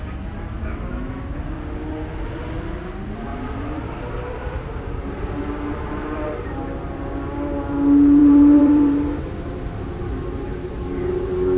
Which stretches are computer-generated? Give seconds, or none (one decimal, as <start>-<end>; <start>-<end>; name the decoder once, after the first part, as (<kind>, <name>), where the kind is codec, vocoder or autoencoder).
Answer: 3.3-5.4 (vocoder, BigVGAN v2); 8.2-11.6